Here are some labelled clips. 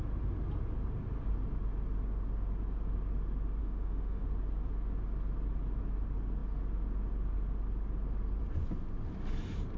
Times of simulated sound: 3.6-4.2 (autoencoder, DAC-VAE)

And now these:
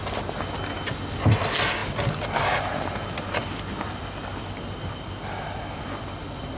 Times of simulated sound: none